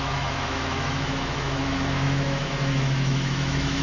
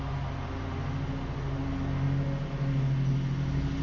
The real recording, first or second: second